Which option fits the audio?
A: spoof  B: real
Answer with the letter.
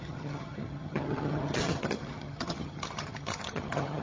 A